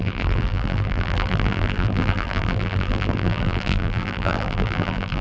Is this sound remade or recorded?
remade